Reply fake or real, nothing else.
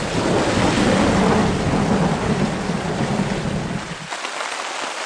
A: real